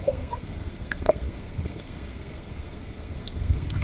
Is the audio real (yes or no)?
no